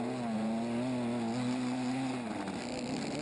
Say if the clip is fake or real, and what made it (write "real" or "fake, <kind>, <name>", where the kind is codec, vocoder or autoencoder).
real